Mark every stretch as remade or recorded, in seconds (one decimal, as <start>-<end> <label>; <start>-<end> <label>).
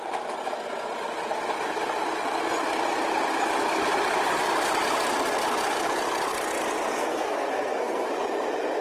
0.0-7.0 recorded; 7.0-8.1 remade; 8.1-8.8 recorded